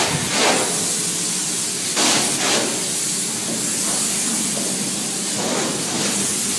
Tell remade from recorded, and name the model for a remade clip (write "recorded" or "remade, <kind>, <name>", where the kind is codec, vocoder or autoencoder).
recorded